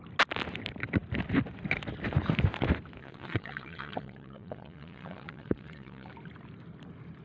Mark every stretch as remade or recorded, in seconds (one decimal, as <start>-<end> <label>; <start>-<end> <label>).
0.0-3.0 recorded; 3.0-6.1 remade; 6.1-7.2 recorded